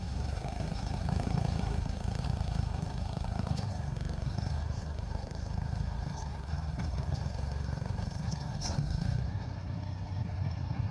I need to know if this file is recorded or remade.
remade